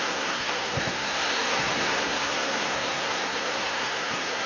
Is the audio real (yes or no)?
no